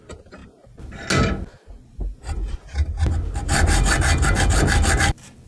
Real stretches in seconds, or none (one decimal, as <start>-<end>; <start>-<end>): 0.0-5.5